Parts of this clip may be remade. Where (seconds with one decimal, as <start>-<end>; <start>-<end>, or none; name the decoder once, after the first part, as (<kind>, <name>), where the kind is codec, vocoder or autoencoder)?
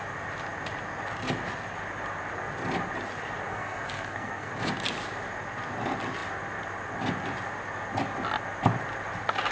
3.5-4.5 (codec, SNAC)